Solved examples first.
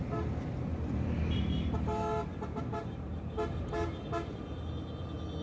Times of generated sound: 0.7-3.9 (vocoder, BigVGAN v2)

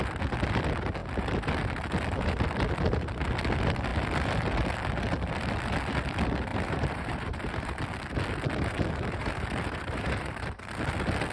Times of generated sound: 6.5-7.8 (vocoder, BigVGAN v2); 9.2-10.6

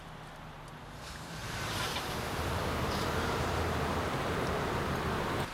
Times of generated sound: 1.4-4.7 (vocoder, BigVGAN v2)

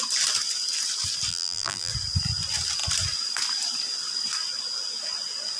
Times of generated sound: 1.3-1.9 (vocoder, BigVGAN v2)

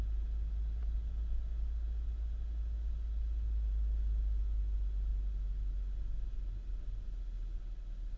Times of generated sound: none

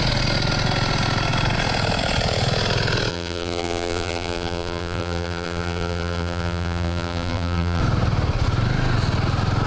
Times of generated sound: 3.1-7.8 (vocoder, BigVGAN v2)